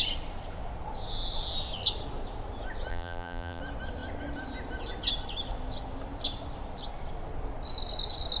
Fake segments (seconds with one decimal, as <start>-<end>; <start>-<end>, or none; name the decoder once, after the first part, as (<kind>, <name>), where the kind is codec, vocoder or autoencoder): 2.9-3.6 (vocoder, BigVGAN v2)